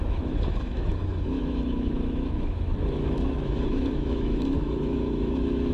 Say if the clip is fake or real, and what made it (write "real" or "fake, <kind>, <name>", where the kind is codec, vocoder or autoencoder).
fake, autoencoder, DAC-VAE